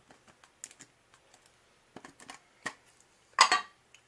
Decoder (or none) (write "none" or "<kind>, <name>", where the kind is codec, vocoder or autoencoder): none